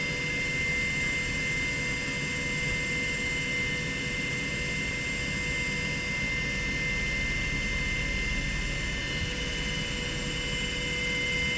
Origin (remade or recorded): recorded